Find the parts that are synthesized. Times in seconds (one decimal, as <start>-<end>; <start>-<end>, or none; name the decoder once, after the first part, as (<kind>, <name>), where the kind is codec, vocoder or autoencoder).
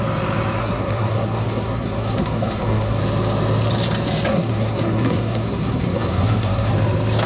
0.6-3.0 (codec, SNAC); 4.3-6.7